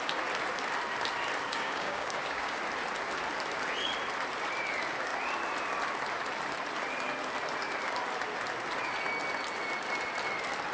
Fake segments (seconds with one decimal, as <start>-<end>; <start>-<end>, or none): 1.5-2.6